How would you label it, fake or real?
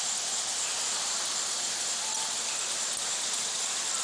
fake